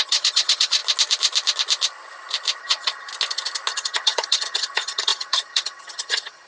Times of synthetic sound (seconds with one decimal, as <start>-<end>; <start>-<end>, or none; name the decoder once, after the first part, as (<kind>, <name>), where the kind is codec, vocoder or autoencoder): 0.0-0.8 (vocoder, HiFi-GAN); 2.6-3.1; 3.7-6.5